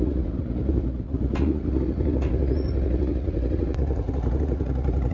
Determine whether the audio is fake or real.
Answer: fake